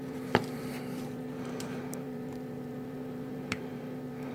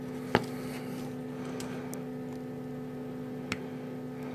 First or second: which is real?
second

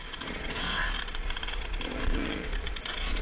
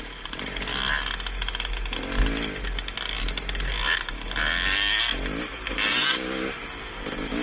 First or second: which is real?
second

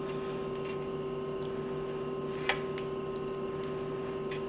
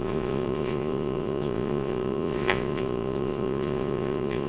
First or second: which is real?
first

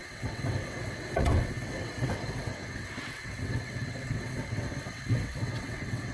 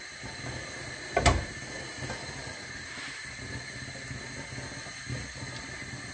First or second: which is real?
second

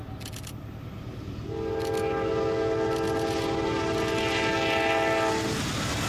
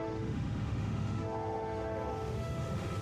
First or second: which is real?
first